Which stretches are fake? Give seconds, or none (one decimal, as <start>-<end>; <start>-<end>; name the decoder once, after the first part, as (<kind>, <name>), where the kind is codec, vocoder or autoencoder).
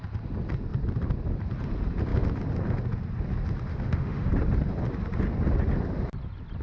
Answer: 3.7-4.3 (autoencoder, DAC-VAE)